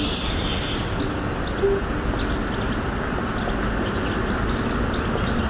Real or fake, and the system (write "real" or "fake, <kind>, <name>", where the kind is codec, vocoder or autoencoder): real